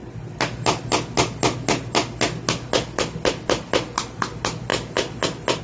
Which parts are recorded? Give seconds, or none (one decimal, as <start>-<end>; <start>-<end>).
0.0-5.6